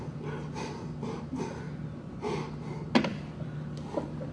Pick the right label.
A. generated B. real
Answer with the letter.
B